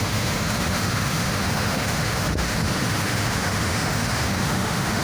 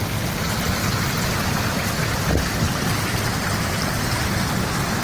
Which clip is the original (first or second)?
second